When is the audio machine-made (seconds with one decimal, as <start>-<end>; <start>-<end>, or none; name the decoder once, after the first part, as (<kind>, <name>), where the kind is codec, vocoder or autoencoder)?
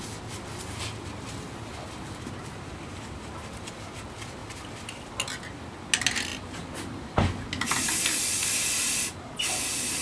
4.4-5.1 (vocoder, BigVGAN v2)